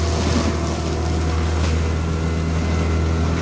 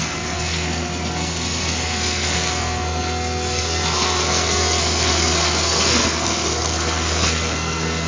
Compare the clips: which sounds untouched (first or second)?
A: first